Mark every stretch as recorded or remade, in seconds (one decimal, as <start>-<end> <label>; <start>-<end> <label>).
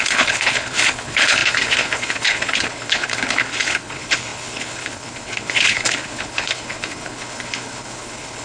0.0-8.4 remade